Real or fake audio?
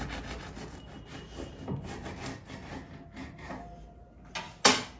real